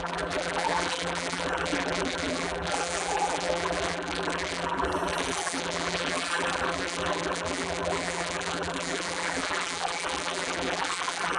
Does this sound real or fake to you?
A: fake